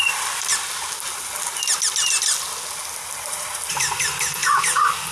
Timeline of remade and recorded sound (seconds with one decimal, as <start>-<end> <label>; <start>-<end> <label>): 0.0-0.5 remade; 0.5-3.2 recorded; 3.2-4.4 remade; 4.4-5.1 recorded